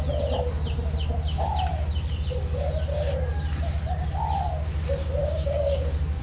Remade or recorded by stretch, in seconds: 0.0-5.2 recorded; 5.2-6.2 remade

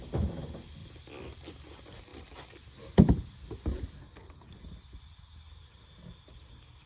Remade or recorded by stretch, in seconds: 0.0-6.9 recorded